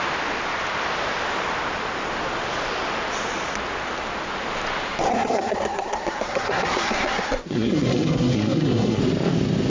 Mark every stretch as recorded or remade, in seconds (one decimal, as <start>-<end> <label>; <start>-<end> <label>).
0.0-5.1 recorded; 5.1-9.0 remade; 9.0-9.7 recorded